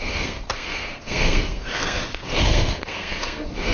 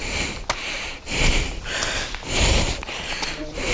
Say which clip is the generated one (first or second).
first